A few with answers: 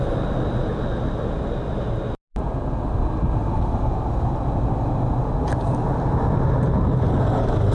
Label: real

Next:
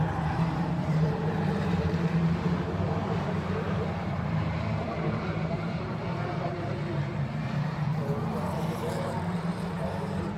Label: fake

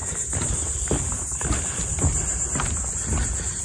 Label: real